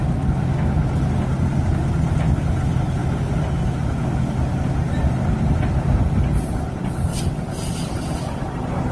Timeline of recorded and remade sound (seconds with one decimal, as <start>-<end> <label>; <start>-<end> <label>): 0.0-3.0 recorded; 3.0-5.2 remade; 5.2-7.1 recorded; 7.1-7.7 remade; 7.7-8.9 recorded